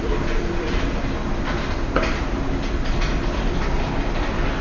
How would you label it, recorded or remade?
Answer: remade